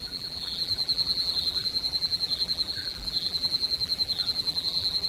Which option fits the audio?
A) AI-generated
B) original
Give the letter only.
A